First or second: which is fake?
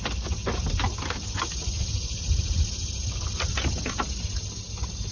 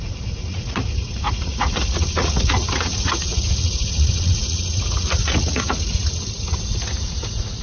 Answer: second